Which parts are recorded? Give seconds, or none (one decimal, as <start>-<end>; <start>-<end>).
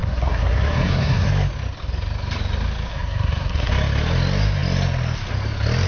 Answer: 1.3-2.9; 3.7-5.9